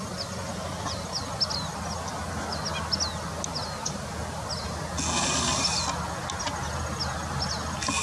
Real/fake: real